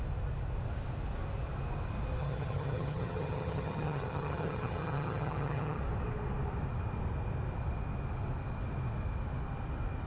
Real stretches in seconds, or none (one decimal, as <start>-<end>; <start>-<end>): 0.0-2.2; 5.8-10.1